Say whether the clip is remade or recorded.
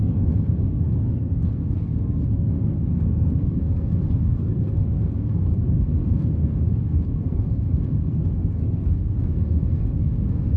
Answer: remade